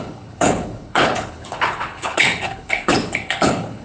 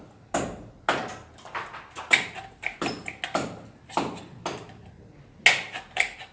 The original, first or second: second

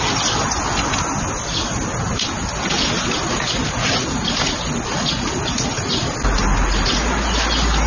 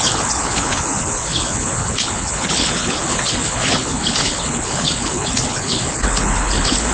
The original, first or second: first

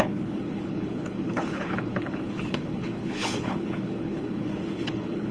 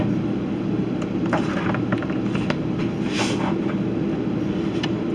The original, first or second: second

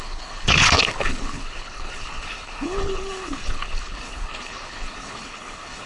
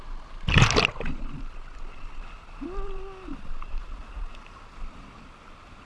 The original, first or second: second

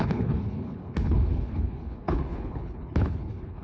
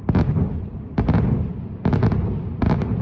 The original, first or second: second